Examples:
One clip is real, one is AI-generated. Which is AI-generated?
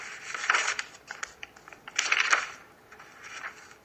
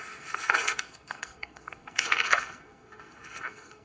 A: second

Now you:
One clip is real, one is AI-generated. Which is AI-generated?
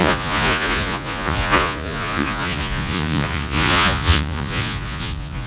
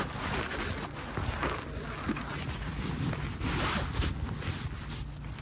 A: first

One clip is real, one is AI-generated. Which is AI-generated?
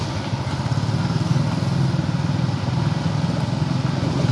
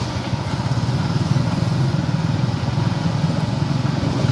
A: second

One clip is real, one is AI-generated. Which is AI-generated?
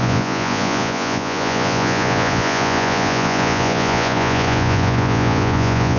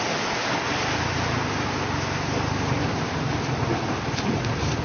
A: first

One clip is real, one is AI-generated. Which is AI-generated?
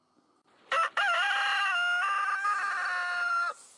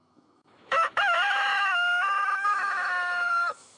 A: second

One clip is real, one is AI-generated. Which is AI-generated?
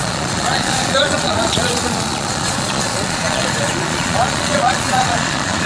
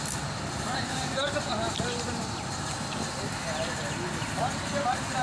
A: first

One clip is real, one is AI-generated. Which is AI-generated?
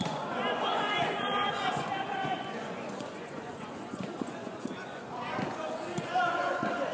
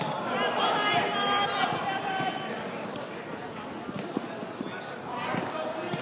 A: first